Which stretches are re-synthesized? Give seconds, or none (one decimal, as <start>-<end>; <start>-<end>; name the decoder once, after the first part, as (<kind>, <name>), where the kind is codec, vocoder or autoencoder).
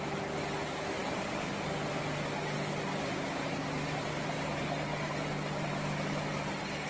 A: 5.7-6.2 (autoencoder, DAC-VAE)